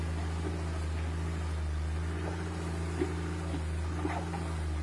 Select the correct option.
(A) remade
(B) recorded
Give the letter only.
B